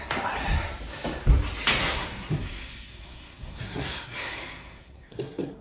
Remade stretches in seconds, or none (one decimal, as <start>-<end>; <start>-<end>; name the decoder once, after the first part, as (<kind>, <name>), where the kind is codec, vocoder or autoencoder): 1.8-5.6 (codec, SNAC)